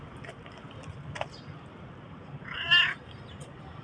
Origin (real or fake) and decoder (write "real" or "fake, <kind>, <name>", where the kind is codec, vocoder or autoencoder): real